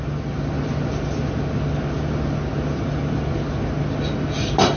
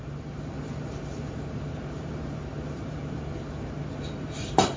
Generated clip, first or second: second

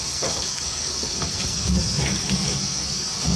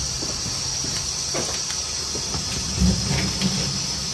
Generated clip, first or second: first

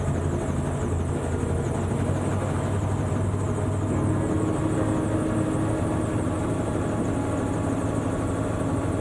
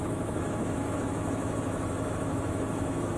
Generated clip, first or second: second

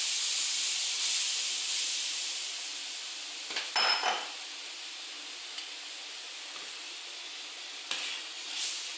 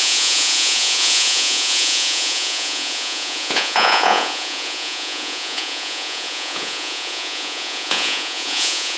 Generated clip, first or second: second